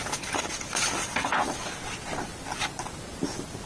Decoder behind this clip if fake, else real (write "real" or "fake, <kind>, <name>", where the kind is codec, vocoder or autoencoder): real